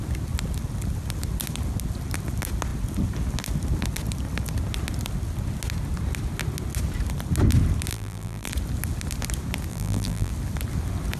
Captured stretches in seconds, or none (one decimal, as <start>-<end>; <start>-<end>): 0.0-7.9; 8.5-9.7; 10.3-11.2